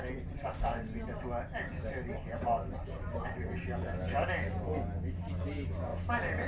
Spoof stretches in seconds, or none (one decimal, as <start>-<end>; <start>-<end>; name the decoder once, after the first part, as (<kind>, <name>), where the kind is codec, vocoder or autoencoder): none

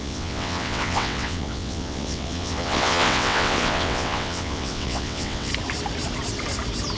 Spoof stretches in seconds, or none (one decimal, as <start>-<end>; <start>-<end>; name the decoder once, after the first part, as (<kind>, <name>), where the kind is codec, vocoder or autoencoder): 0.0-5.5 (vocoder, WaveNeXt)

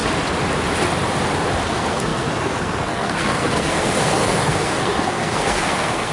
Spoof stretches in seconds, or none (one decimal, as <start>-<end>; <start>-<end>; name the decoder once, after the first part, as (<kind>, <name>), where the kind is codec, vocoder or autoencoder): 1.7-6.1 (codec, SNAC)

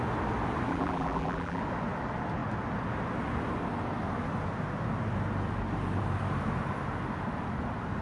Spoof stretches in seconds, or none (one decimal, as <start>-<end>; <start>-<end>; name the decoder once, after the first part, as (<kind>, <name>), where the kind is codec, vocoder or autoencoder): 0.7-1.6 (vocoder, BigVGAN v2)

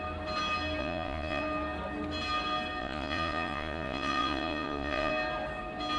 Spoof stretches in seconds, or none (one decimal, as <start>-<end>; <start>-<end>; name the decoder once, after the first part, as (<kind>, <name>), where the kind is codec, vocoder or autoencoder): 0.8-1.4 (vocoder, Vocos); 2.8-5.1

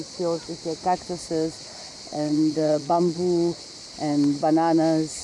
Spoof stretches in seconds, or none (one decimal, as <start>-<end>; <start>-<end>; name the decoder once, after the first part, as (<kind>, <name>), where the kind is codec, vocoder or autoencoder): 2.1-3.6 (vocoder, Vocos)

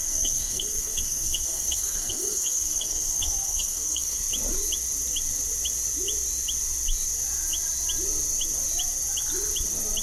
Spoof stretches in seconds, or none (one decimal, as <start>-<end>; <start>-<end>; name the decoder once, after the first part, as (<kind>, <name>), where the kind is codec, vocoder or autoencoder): 0.0-4.2 (codec, SNAC)

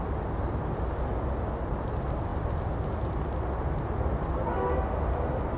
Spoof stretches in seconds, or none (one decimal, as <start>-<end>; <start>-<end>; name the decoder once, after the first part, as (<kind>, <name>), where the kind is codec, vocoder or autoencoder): none